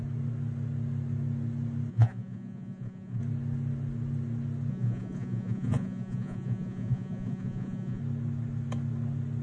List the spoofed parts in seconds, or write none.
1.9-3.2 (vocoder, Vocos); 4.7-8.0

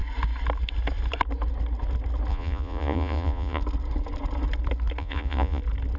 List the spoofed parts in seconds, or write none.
2.3-3.6 (vocoder, Vocos); 5.0-5.6

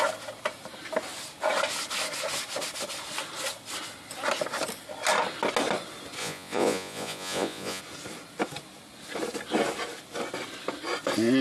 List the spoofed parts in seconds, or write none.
6.2-7.8 (vocoder, Vocos)

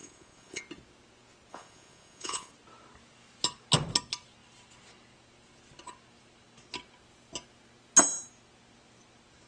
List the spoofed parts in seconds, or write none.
0.0-0.6 (vocoder, Vocos); 1.5-2.5

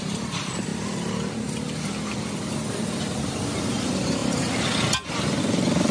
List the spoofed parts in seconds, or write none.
none

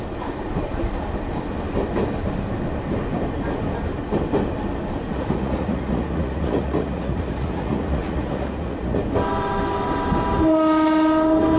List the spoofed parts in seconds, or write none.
5.1-9.0 (vocoder, Vocos)